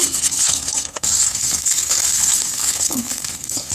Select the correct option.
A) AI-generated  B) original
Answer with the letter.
A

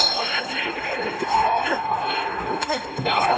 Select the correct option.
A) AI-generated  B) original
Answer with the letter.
A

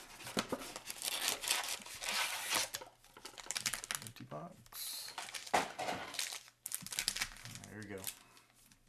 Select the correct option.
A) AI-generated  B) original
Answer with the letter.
B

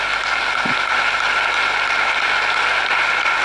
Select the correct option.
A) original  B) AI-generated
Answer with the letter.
A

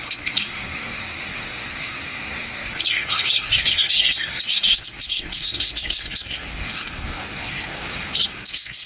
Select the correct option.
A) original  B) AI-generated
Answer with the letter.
B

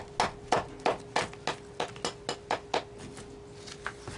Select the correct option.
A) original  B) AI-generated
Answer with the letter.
A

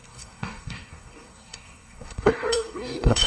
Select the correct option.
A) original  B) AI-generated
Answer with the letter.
B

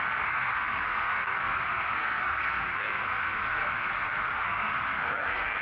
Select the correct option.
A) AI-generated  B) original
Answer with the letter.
A